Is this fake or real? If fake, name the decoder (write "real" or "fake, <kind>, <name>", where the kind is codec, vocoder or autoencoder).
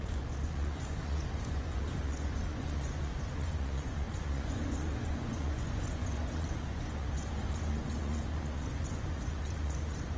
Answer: fake, vocoder, Vocos